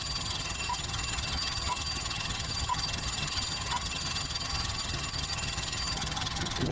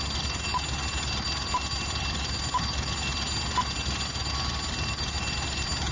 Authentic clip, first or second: second